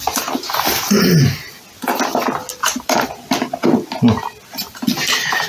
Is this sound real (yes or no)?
yes